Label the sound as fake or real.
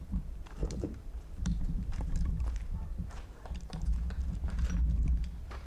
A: fake